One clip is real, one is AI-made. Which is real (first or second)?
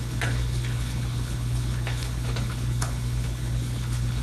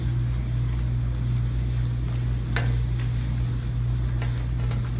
second